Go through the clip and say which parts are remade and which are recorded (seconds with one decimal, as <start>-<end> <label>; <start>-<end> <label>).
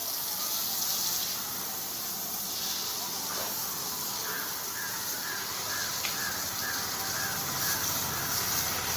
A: 0.0-0.6 remade; 0.6-5.9 recorded; 5.9-8.3 remade; 8.3-9.0 recorded